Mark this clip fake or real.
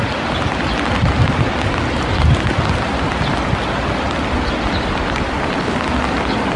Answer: real